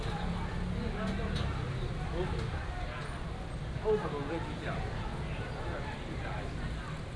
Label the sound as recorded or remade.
recorded